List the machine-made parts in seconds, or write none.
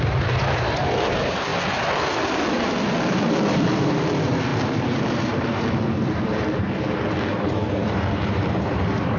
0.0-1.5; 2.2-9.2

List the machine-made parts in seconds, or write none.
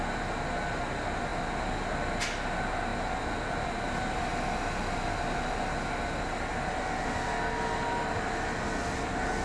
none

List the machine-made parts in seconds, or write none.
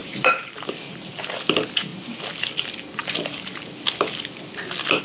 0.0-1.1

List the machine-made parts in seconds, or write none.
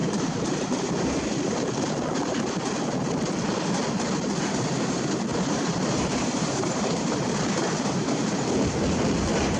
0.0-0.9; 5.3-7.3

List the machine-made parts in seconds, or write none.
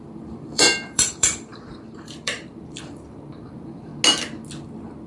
0.0-3.9